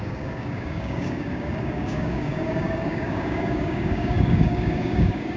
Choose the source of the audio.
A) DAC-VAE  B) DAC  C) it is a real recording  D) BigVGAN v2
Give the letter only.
B